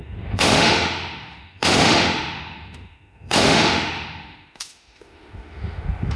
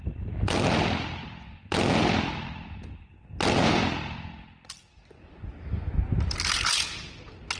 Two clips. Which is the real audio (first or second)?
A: second